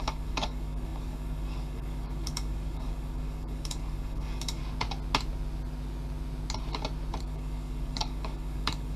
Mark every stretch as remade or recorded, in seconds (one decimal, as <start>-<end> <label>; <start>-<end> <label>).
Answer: 0.0-4.6 remade; 4.6-7.2 recorded; 7.2-9.0 remade